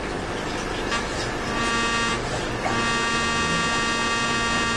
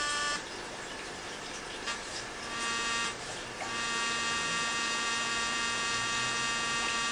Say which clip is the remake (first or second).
second